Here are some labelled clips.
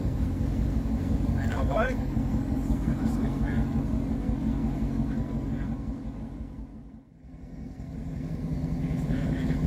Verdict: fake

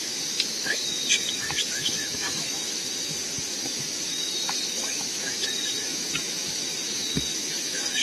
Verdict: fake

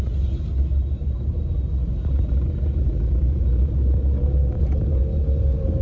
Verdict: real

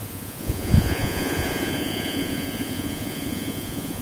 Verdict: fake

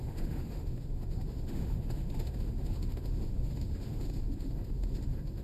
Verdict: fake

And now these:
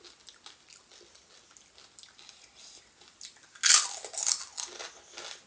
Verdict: real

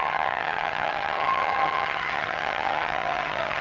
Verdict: fake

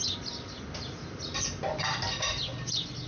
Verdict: real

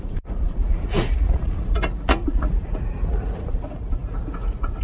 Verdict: fake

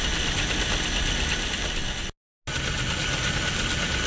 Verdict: real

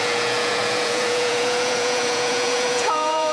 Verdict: fake